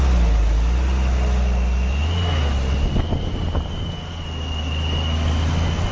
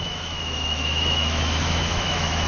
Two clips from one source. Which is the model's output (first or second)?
second